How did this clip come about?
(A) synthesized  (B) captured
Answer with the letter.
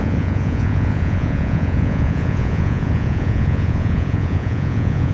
A